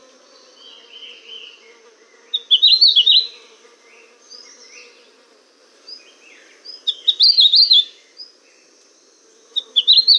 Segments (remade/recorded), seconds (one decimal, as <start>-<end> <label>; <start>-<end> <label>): 0.0-4.0 recorded; 4.0-5.6 remade; 5.6-7.2 recorded; 7.2-10.2 remade